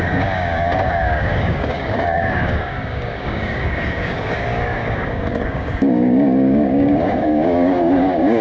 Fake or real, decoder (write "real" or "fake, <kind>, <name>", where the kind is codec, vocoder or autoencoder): fake, codec, DAC